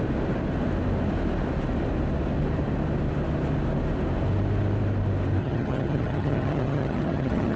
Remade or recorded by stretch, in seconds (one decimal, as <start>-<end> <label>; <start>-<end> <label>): 0.0-5.4 recorded; 5.4-7.6 remade